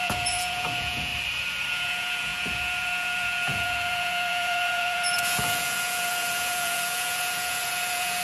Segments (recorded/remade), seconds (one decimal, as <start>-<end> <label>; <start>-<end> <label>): 0.0-1.1 remade; 1.1-1.7 recorded; 1.7-8.2 remade